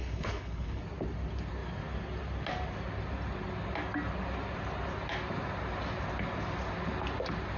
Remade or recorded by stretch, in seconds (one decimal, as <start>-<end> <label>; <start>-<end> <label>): 0.0-0.8 remade; 0.8-7.6 recorded